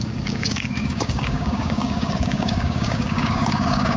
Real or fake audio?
fake